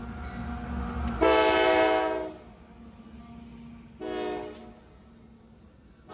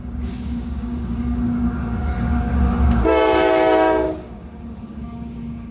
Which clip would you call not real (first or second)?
second